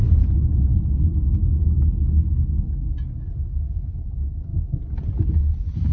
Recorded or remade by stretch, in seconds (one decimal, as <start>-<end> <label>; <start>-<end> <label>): 0.0-5.9 recorded